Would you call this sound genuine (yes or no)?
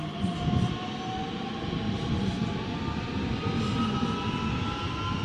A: yes